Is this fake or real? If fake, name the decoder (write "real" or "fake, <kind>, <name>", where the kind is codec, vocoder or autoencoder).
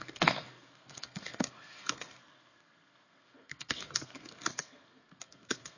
fake, codec, SNAC